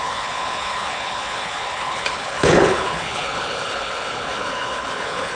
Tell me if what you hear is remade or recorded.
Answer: remade